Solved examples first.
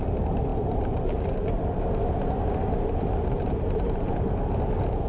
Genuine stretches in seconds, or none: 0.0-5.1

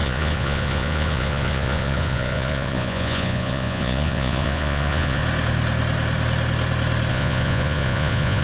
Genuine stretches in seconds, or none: 5.2-7.1

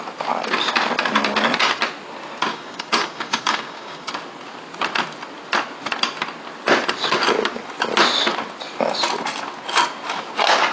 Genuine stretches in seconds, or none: 0.0-2.5; 4.1-10.7

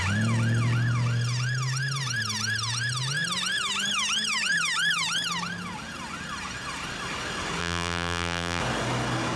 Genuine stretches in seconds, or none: 0.0-7.6; 8.6-9.4

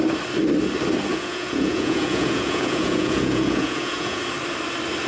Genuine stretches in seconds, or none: 0.0-1.1; 4.2-5.1

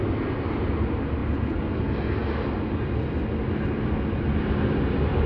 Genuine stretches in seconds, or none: 0.0-5.3